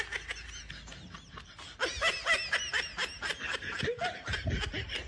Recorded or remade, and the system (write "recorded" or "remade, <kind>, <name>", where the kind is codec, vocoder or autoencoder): recorded